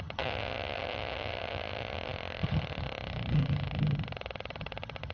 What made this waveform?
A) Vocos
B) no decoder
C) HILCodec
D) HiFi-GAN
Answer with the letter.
D